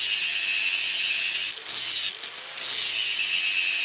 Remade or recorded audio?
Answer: recorded